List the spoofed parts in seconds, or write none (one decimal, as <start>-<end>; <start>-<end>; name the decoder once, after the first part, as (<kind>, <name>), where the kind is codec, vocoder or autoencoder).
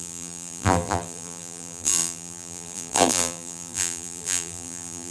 0.0-5.1 (vocoder, BigVGAN v2)